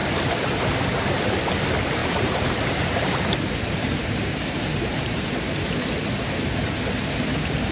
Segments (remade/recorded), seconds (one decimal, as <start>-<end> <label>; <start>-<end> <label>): 0.0-2.0 recorded; 2.0-5.2 remade; 5.2-7.7 recorded